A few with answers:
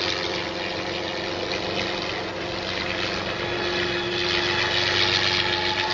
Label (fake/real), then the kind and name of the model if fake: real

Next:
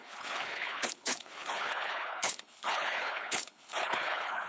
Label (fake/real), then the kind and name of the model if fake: fake, codec, HILCodec